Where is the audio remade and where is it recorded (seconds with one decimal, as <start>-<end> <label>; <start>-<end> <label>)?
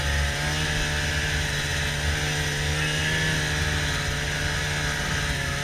0.0-5.6 recorded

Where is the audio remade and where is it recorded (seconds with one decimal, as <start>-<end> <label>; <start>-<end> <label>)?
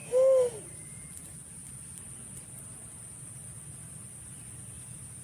0.0-5.2 recorded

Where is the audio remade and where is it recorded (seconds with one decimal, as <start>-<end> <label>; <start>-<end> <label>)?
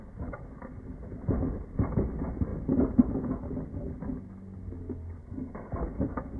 0.0-5.2 recorded; 5.2-5.7 remade; 5.7-6.4 recorded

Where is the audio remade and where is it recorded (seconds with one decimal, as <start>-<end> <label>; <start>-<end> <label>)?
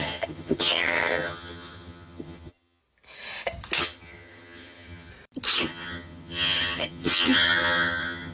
0.0-2.8 remade; 2.8-3.8 recorded; 3.8-5.1 remade; 5.1-5.6 recorded; 5.6-8.3 remade